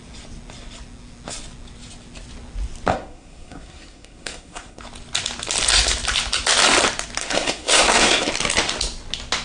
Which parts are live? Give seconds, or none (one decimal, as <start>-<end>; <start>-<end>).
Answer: 0.0-2.9; 4.8-7.2; 8.3-9.4